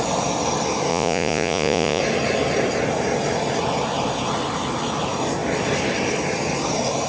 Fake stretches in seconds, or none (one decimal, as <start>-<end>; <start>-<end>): 0.9-2.0

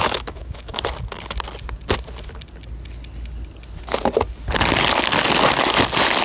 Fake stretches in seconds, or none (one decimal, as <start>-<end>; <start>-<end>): 0.0-0.8

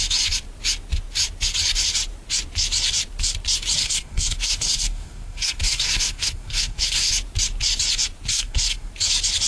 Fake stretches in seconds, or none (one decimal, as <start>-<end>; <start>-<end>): 3.8-7.1; 8.3-8.9

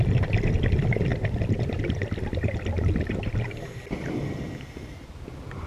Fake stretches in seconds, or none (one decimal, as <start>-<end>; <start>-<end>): 1.1-2.2

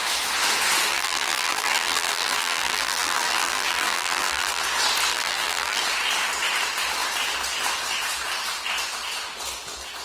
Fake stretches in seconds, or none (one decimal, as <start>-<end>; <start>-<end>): 0.9-4.6; 5.1-5.8

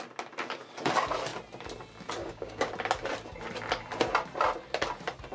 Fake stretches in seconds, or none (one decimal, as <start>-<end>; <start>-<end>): 2.2-2.7